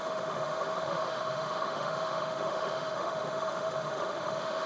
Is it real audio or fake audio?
fake